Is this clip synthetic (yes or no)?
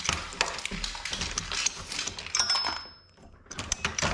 no